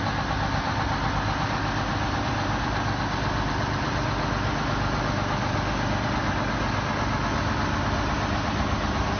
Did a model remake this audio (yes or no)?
no